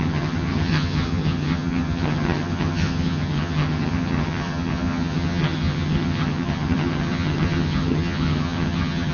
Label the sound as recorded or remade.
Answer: remade